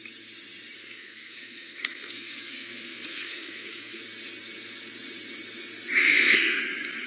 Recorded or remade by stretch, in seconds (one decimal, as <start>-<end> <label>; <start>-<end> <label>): 0.0-0.8 recorded; 0.8-4.0 remade; 4.0-6.0 recorded; 6.0-6.6 remade; 6.6-7.1 recorded